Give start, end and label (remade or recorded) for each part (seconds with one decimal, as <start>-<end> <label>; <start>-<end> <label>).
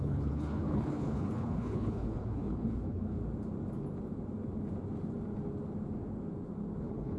0.0-3.2 remade; 3.2-6.8 recorded; 6.8-7.2 remade